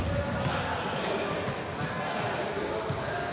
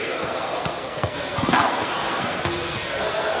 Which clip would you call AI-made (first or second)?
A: second